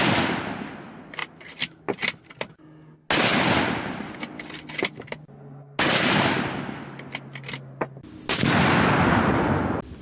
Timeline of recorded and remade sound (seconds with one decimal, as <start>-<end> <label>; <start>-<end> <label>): 0.0-10.0 recorded